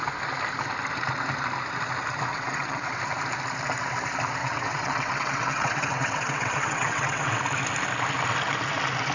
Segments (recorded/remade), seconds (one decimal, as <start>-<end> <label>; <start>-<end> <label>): 0.0-2.3 recorded; 2.3-3.0 remade; 3.0-4.4 recorded; 4.4-7.4 remade; 7.4-9.1 recorded